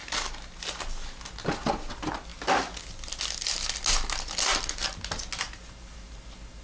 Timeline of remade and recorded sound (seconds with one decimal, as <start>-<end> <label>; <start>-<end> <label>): 0.0-6.6 recorded